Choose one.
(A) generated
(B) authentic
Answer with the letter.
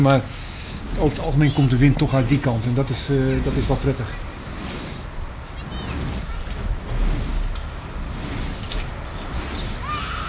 B